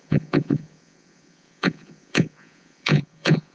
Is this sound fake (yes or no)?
yes